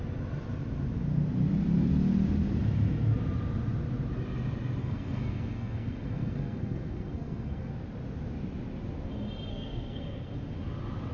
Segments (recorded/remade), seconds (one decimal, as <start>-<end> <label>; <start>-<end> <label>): 0.0-4.8 recorded; 4.8-7.7 remade; 7.7-9.5 recorded; 9.5-10.3 remade; 10.3-11.1 recorded